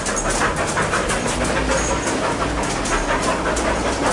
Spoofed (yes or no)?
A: no